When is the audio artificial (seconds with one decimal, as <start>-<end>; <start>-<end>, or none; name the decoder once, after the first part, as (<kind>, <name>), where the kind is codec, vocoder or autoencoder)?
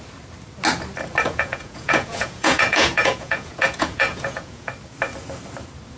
1.2-4.7 (vocoder, Vocos)